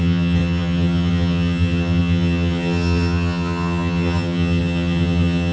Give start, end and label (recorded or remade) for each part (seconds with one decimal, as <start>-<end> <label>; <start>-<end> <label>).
0.0-5.5 remade